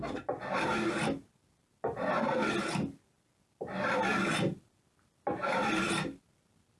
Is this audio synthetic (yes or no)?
no